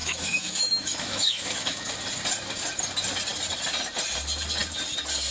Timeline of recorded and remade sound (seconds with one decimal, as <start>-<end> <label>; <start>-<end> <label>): 0.0-1.9 remade; 1.9-5.3 recorded